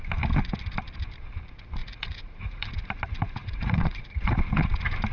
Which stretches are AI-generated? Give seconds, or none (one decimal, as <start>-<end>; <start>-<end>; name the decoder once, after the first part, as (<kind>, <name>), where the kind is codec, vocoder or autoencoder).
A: 1.8-2.7 (vocoder, Vocos); 3.4-4.4